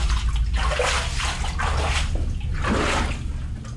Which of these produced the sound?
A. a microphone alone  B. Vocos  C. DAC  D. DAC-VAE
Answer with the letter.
A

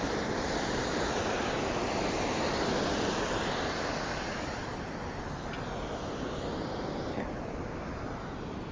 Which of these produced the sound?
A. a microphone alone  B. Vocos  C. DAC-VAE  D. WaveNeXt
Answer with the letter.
A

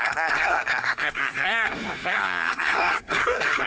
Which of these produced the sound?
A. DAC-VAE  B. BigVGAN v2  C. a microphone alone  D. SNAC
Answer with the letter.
D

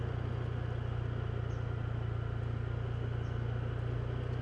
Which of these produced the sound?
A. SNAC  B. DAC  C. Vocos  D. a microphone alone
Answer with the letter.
D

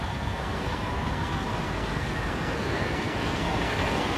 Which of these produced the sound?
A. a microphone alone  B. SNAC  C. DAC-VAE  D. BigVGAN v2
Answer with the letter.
B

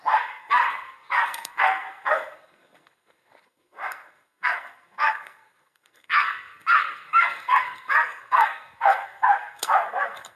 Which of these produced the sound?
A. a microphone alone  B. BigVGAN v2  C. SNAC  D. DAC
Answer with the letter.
C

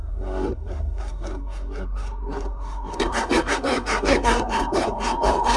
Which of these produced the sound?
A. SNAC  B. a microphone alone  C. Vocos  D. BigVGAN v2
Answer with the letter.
A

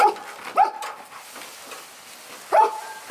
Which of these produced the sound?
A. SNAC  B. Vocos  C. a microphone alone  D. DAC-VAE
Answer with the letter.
C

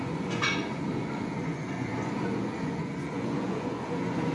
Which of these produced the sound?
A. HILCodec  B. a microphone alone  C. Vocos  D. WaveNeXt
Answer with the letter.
C